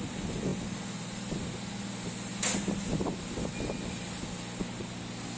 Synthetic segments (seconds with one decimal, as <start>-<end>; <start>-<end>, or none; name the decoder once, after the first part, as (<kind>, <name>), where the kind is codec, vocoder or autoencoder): none